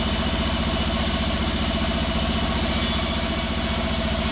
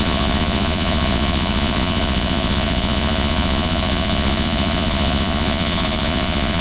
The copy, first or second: second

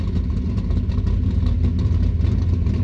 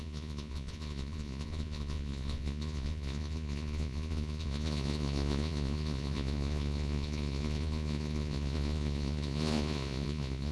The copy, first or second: second